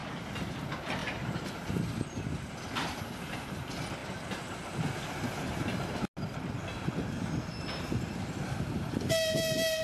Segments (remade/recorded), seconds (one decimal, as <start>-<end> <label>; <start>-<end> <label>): 0.0-1.0 recorded; 1.0-1.5 remade; 1.5-9.8 recorded